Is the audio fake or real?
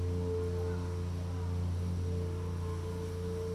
real